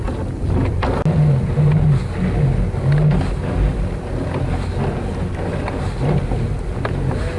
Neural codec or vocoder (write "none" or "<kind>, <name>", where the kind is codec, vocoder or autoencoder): none